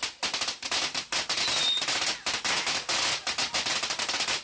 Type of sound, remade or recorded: recorded